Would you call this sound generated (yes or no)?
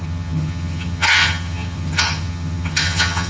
yes